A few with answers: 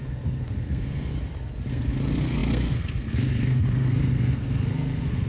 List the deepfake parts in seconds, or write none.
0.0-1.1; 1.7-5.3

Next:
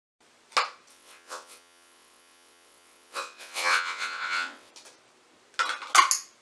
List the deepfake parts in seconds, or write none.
0.9-4.7

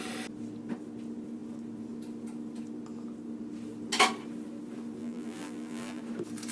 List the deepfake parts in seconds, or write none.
5.0-6.0

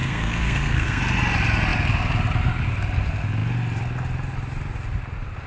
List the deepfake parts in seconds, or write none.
0.0-1.0

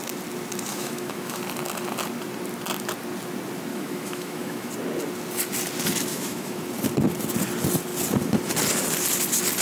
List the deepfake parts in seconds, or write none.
0.7-1.4; 3.7-4.7; 6.1-6.6